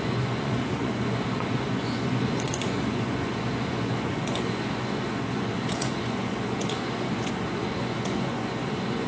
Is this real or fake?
fake